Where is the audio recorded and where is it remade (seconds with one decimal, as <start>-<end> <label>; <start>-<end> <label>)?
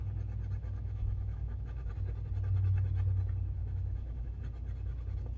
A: 0.0-0.6 recorded; 0.6-1.9 remade; 1.9-3.6 recorded; 3.6-4.4 remade; 4.4-5.4 recorded